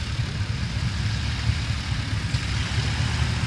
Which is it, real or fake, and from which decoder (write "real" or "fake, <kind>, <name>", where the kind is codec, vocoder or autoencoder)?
real